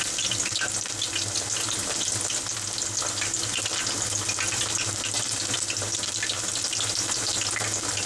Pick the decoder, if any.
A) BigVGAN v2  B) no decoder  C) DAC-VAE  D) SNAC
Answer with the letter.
B